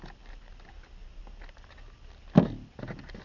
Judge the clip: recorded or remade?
recorded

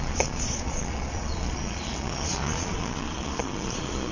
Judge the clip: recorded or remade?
remade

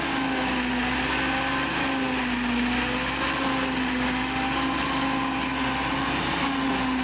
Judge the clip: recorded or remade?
recorded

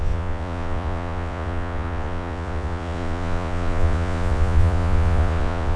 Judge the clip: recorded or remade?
remade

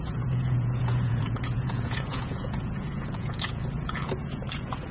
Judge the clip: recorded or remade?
remade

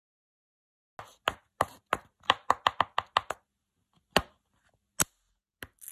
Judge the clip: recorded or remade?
recorded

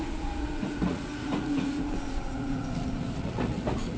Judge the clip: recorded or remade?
remade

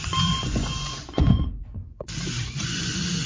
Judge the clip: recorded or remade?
remade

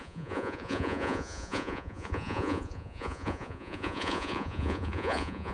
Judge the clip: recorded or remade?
remade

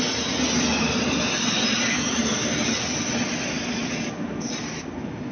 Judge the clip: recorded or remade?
recorded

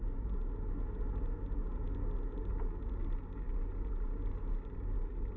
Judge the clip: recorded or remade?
recorded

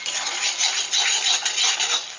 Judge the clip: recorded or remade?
recorded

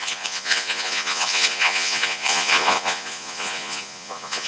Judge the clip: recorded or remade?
remade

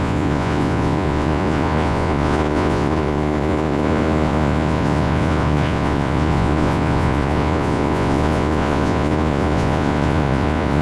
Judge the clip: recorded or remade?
remade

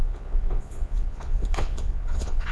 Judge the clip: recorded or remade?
remade